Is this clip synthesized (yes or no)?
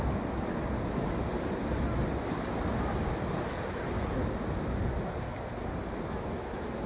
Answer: no